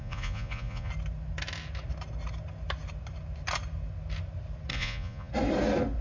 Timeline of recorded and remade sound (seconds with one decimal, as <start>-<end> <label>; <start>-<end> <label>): 0.0-0.9 remade; 0.9-4.7 recorded; 4.7-5.3 remade; 5.3-6.0 recorded